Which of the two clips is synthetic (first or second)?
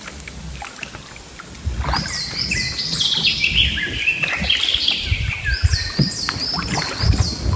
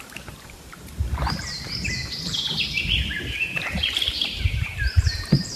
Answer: second